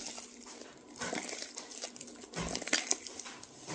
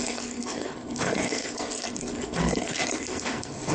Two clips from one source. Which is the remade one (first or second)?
second